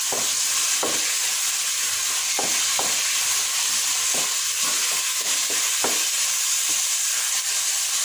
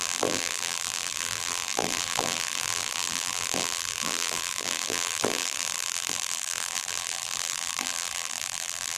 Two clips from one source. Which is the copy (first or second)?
second